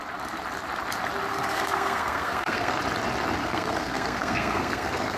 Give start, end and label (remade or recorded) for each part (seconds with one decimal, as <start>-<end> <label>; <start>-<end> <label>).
0.0-1.3 recorded; 1.3-2.8 remade; 2.8-3.4 recorded; 3.4-5.2 remade